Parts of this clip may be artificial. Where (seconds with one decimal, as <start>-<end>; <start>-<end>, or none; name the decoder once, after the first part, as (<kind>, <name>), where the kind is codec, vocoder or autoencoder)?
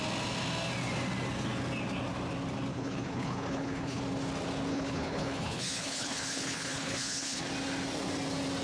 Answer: 2.7-4.0 (codec, HILCodec); 4.7-7.4